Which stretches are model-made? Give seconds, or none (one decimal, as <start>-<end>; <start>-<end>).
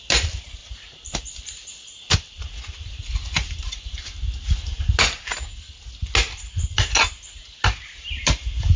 none